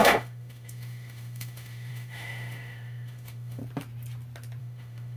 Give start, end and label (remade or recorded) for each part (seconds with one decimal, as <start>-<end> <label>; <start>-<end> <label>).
0.0-3.6 remade; 3.6-4.6 recorded; 4.6-5.2 remade